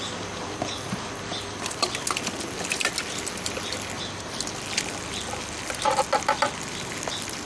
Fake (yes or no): no